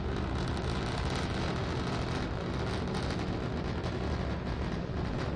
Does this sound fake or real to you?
real